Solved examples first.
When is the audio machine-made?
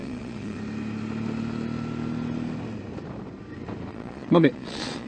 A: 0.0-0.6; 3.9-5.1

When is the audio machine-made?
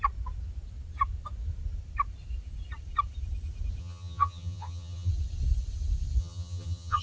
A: 3.8-5.1; 6.2-7.0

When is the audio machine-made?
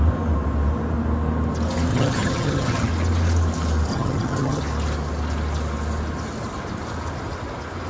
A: 1.9-2.9; 3.9-4.6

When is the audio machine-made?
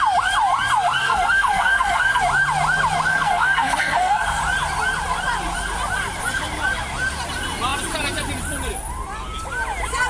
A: 1.0-2.2; 3.1-4.4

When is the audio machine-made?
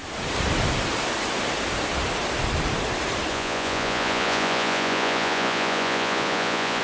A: 3.3-6.8